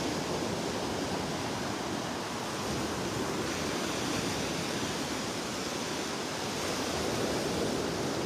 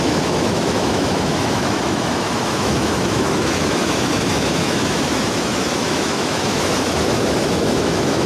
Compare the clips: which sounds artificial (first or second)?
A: second